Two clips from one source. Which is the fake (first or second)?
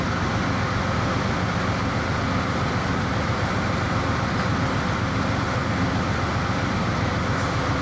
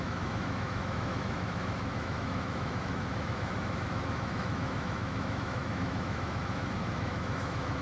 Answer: second